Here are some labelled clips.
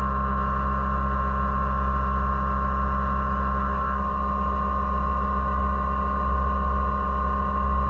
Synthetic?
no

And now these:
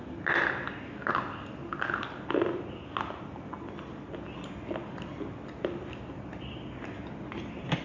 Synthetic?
no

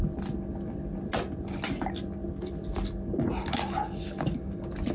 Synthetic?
no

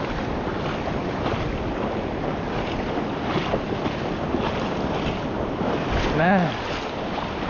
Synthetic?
no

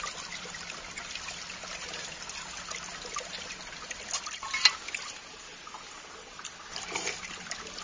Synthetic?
no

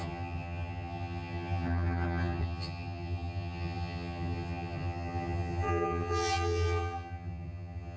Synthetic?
yes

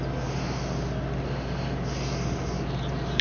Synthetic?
no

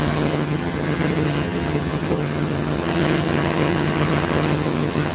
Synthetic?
yes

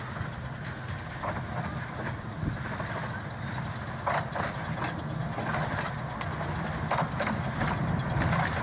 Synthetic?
no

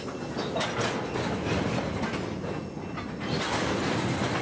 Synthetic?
no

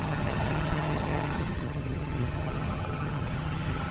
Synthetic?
yes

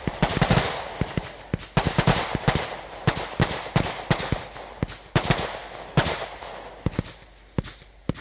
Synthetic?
no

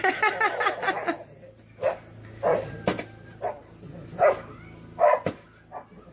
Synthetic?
no